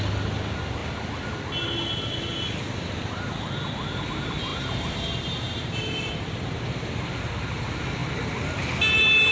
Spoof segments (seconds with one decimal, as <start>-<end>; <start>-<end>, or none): 4.5-7.2